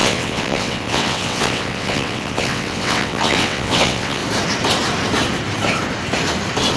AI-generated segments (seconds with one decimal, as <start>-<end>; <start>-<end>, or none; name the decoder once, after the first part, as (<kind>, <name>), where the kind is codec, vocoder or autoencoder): 0.0-4.2 (vocoder, WaveNeXt)